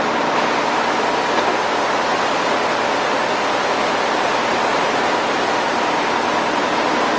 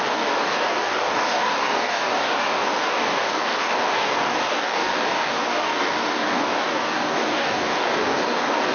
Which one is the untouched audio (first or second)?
first